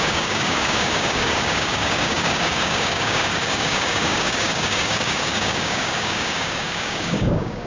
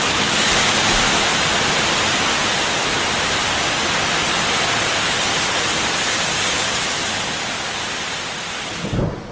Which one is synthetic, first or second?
first